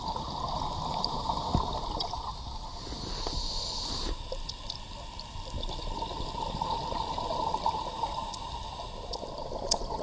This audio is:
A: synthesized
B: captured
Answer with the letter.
B